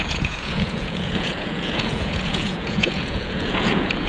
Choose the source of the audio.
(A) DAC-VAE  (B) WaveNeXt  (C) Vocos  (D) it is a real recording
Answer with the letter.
C